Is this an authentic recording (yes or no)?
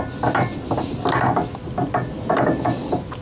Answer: yes